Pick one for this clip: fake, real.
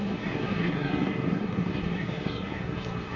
fake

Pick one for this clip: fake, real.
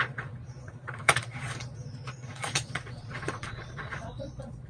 fake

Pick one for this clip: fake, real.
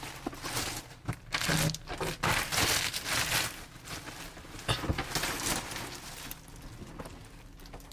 real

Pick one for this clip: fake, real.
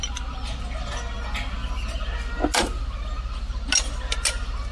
real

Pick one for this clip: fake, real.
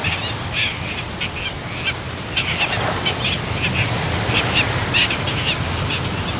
real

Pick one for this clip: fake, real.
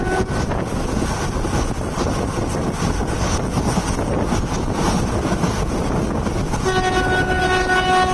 real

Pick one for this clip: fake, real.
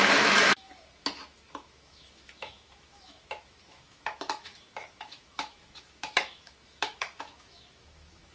fake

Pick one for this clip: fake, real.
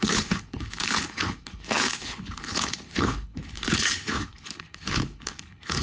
fake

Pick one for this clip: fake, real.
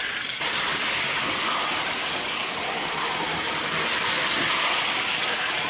real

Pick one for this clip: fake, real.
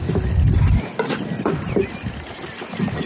real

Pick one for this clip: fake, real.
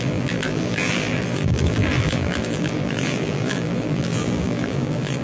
fake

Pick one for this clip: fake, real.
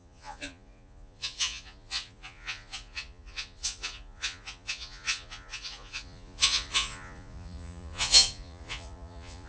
fake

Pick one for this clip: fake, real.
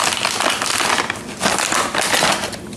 real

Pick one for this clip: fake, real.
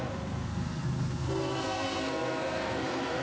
fake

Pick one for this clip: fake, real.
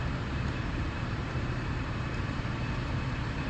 fake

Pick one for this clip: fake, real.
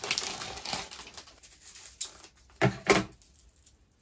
real